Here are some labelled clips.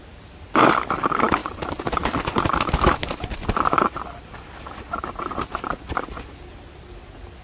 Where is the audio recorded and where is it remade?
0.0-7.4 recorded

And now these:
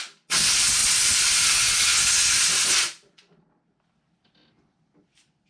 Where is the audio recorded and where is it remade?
0.0-5.5 recorded

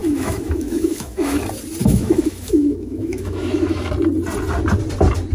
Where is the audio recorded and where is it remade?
0.0-1.4 remade; 1.4-1.8 recorded; 1.8-3.9 remade; 3.9-5.3 recorded